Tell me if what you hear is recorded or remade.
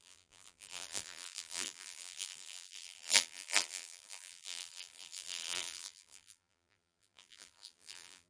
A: remade